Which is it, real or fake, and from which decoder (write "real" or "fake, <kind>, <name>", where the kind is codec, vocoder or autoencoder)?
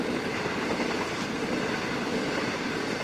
fake, vocoder, BigVGAN v2